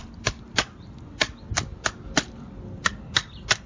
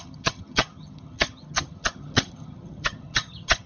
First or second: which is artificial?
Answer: second